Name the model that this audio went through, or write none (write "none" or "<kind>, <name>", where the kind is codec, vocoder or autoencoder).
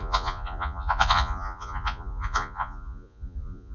vocoder, Vocos